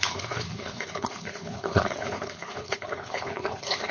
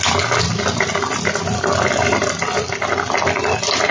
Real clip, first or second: second